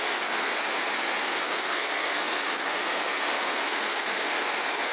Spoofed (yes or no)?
yes